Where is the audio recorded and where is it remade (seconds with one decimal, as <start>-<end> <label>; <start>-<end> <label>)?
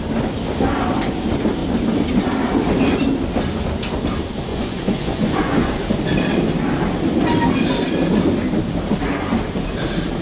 0.0-4.5 recorded; 4.5-5.8 remade; 5.8-10.2 recorded